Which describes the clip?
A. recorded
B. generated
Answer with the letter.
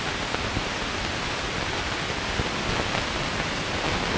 A